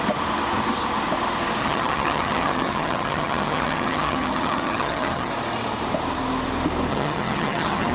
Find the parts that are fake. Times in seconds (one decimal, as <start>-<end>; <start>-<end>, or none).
1.6-5.3; 6.9-7.9